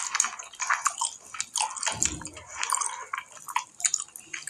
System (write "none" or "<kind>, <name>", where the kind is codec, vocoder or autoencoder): none